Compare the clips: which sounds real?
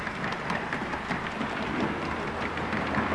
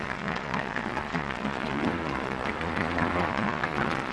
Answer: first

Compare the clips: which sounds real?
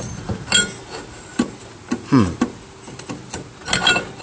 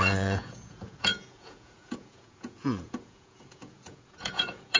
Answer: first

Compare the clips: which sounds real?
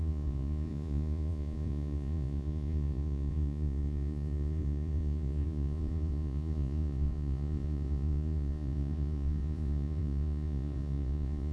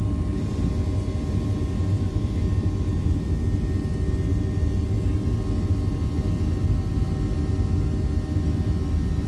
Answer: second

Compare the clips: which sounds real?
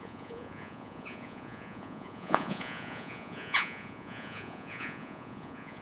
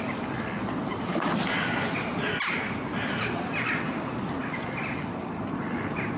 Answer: second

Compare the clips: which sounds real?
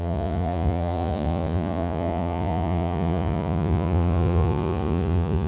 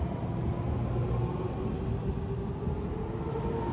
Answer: second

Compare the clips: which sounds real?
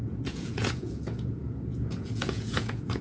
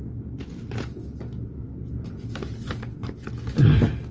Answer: second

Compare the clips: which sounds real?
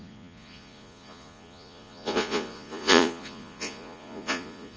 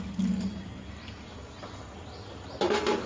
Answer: second